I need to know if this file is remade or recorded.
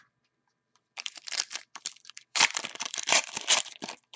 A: remade